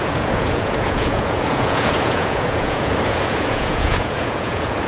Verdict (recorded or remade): remade